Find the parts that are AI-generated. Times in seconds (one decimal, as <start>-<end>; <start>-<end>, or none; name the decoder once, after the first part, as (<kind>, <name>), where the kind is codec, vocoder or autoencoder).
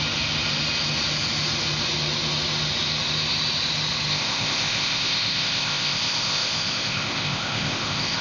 4.1-8.2 (codec, ZipCodec)